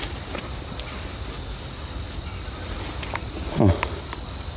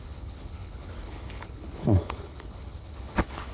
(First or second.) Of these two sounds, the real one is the first